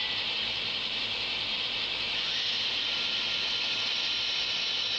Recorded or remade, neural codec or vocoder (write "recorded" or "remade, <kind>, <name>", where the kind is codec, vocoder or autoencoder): remade, vocoder, BigVGAN v2